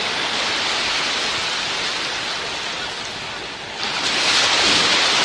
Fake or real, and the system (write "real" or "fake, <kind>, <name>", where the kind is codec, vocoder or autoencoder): real